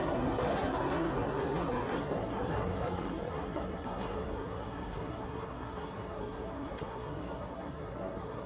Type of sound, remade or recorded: remade